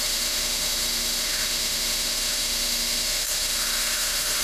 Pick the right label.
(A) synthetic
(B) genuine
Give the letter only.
A